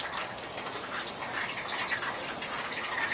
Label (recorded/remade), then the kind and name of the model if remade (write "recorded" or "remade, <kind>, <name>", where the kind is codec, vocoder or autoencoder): recorded